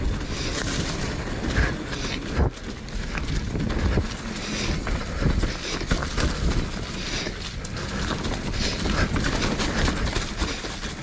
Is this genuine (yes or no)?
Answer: yes